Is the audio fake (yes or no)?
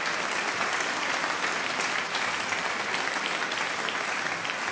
yes